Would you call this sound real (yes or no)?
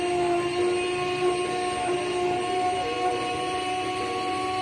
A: yes